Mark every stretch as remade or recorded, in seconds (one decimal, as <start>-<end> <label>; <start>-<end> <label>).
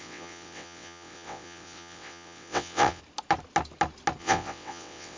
0.0-3.0 remade; 3.0-4.2 recorded; 4.2-5.2 remade